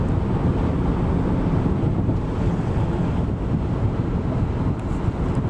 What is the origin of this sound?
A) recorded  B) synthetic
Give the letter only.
A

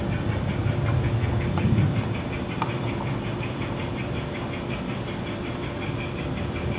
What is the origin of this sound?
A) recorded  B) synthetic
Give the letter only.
A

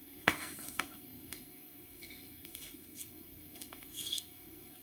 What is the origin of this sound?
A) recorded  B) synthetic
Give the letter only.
B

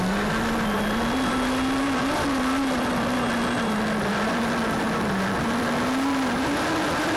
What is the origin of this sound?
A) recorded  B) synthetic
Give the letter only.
A